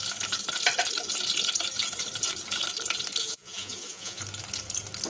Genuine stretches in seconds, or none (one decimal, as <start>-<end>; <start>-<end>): 0.0-3.2; 4.2-5.1